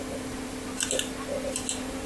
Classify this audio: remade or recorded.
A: recorded